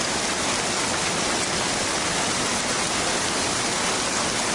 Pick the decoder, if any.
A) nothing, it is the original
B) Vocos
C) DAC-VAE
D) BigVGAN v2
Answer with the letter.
A